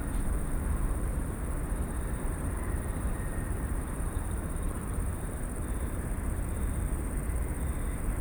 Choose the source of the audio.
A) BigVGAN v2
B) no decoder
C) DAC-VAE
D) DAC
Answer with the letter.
A